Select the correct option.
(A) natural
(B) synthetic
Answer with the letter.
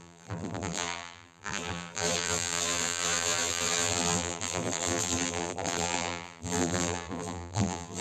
B